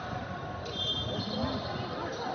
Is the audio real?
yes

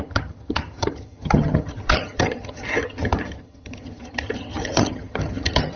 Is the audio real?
no